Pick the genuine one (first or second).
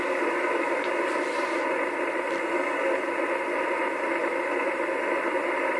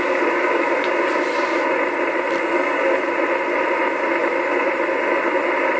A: second